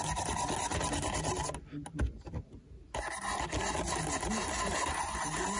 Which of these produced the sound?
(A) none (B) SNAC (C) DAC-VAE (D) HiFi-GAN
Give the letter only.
A